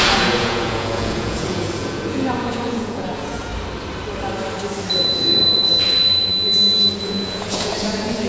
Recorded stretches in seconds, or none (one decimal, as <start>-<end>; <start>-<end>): 3.5-5.0; 6.3-7.0